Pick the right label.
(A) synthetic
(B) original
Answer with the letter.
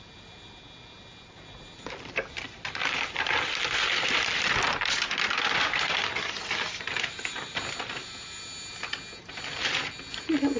B